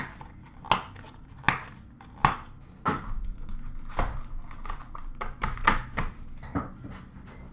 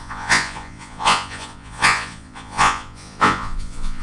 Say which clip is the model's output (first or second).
second